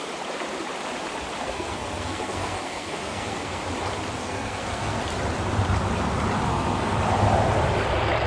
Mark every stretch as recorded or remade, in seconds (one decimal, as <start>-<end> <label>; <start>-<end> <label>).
0.0-1.4 recorded; 1.4-3.6 remade; 3.6-4.2 recorded; 4.2-5.0 remade; 5.0-6.5 recorded; 6.5-7.0 remade; 7.0-8.3 recorded